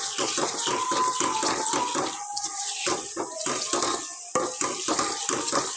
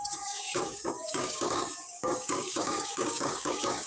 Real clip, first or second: first